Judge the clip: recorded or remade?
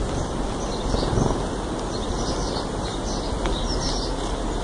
recorded